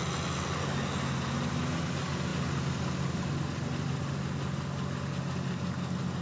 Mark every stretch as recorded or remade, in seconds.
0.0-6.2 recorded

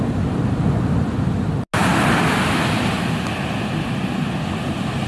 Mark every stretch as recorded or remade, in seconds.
0.0-5.1 recorded

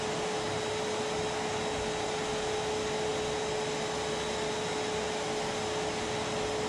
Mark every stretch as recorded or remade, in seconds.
0.0-6.7 recorded

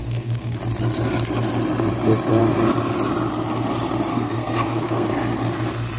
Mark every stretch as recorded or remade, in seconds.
0.0-0.6 remade; 0.6-4.1 recorded; 4.1-5.1 remade; 5.1-6.0 recorded

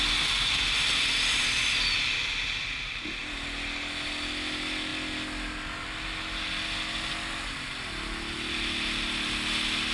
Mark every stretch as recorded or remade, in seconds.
0.0-9.9 recorded

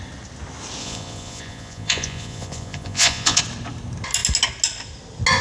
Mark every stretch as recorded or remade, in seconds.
0.0-0.8 recorded; 0.8-3.4 remade; 3.4-5.4 recorded

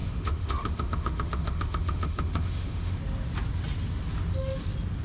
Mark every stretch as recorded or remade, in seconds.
0.0-3.0 remade; 3.0-5.0 recorded